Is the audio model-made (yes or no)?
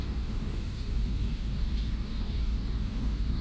yes